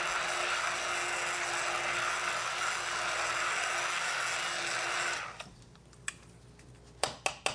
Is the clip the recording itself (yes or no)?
yes